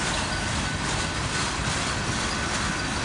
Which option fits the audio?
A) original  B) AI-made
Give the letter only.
A